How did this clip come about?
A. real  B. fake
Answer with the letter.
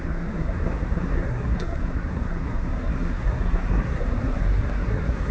B